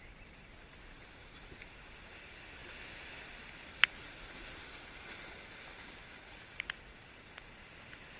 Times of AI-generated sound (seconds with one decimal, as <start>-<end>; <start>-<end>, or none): none